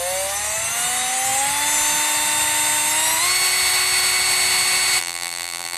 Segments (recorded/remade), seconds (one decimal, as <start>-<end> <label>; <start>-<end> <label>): 0.0-5.0 recorded; 5.0-5.8 remade